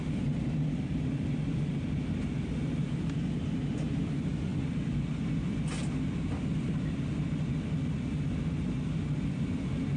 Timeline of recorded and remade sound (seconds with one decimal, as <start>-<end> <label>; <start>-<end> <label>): 0.0-10.0 recorded

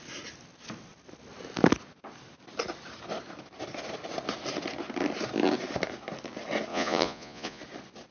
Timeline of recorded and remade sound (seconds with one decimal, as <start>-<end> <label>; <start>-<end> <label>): 0.0-6.7 recorded; 6.7-7.6 remade; 7.6-8.1 recorded

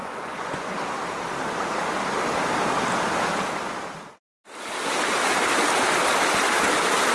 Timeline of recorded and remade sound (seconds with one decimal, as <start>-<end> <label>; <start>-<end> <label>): 0.0-0.7 remade; 0.7-7.1 recorded

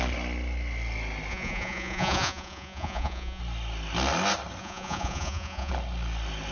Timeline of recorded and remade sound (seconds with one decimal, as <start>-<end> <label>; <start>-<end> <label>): 0.0-1.3 recorded; 1.3-3.4 remade; 3.4-4.6 recorded; 4.6-5.7 remade; 5.7-6.5 recorded

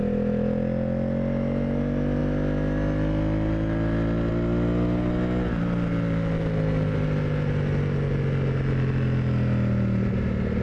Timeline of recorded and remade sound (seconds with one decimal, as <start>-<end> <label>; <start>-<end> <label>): 0.0-10.6 recorded

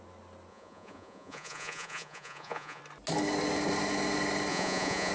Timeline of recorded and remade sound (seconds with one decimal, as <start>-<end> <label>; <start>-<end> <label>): 0.0-0.5 recorded; 0.5-2.8 remade; 2.8-4.5 recorded; 4.5-5.1 remade